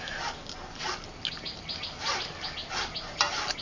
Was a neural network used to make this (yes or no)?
no